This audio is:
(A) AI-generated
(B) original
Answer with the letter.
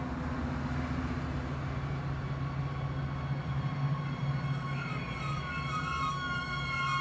B